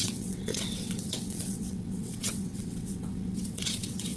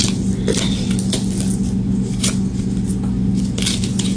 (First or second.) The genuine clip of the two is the second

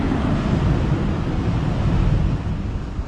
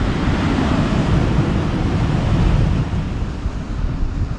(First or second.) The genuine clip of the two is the first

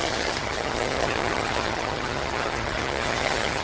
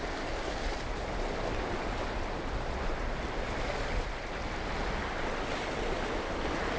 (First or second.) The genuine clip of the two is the second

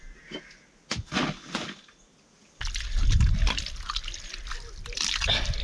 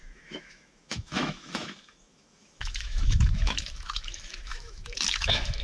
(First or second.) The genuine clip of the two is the first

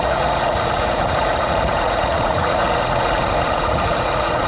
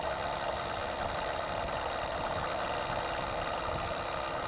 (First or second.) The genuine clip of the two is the second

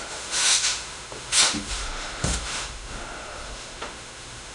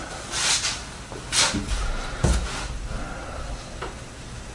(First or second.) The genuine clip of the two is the second